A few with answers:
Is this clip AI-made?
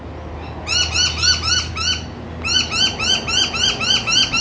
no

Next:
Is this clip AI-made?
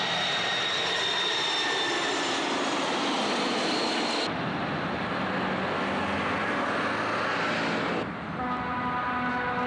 no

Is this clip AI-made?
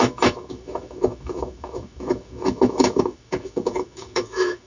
yes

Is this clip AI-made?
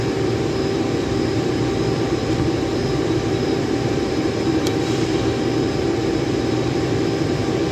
yes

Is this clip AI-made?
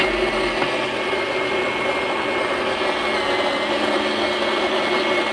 no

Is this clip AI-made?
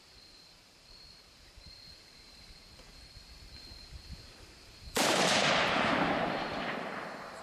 yes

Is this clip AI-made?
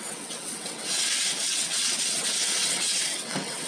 yes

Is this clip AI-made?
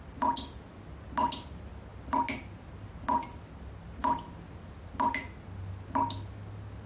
no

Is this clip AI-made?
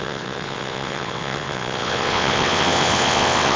yes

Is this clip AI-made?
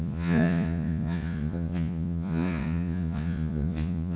yes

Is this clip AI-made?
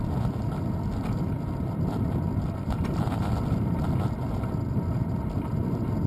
yes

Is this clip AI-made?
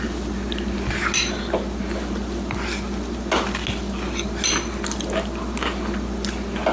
no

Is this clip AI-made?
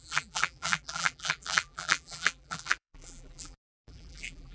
yes